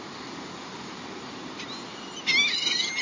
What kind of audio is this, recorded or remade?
recorded